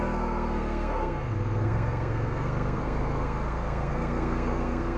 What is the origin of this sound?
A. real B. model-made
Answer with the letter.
B